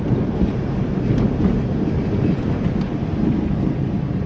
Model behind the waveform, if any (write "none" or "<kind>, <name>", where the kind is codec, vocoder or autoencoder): none